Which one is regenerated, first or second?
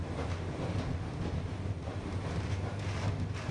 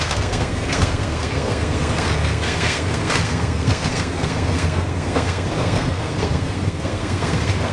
second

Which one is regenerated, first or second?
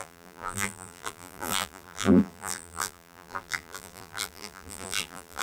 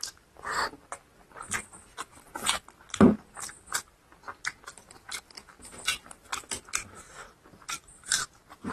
first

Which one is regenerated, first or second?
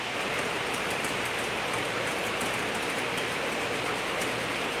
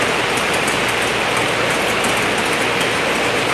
first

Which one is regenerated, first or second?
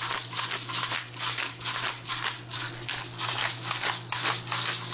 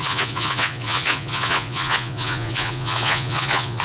second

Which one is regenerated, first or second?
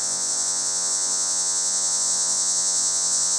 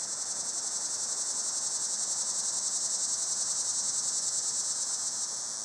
first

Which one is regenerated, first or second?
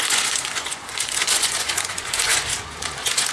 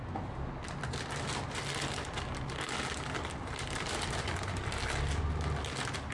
first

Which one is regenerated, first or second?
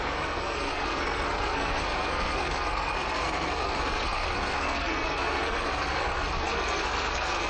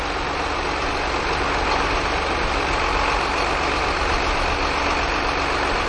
first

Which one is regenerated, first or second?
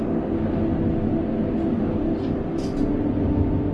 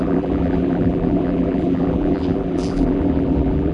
second